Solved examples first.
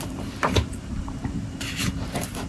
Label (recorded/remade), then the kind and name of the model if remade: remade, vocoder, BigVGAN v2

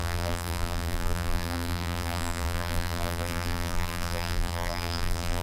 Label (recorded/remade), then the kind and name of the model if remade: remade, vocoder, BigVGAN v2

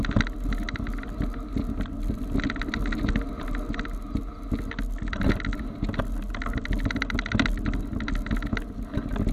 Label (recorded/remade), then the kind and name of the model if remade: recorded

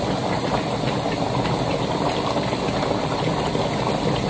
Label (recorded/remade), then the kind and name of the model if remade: recorded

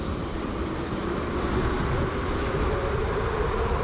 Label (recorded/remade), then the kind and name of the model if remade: remade, vocoder, BigVGAN v2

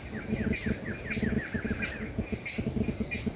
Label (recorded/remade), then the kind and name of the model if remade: recorded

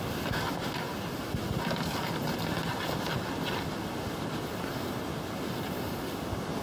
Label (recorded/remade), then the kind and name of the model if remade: recorded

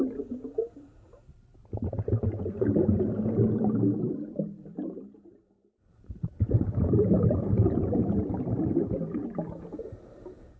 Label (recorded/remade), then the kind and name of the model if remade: remade, vocoder, BigVGAN v2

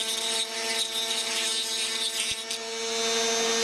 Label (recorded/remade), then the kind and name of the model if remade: recorded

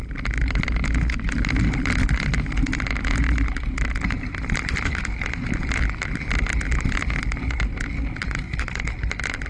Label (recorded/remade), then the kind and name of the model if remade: recorded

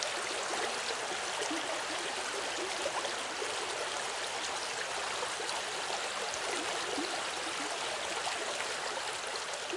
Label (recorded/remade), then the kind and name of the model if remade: recorded